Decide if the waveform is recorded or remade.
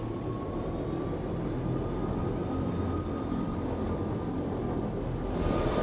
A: recorded